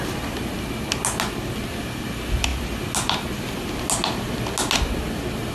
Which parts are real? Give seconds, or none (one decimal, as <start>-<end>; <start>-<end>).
0.0-5.5